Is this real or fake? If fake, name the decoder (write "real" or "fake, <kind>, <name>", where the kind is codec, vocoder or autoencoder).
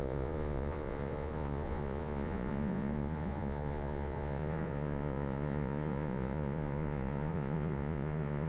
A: fake, vocoder, Vocos